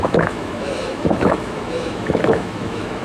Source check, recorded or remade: remade